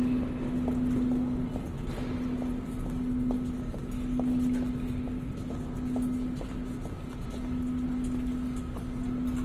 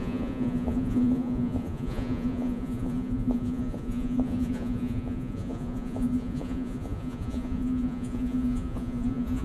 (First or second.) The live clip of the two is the first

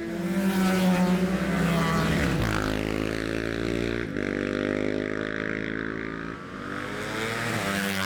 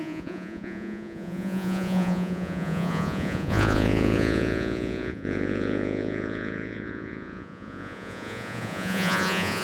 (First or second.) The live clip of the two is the first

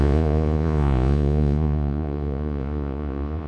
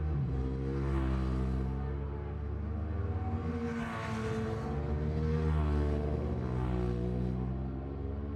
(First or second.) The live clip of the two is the second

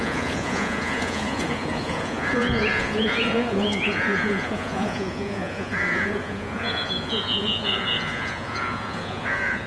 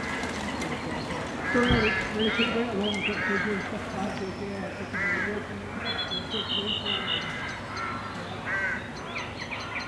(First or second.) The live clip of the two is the second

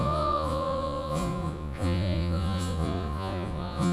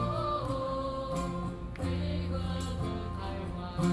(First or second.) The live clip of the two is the second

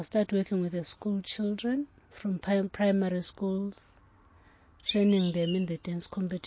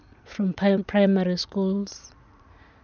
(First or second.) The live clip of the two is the first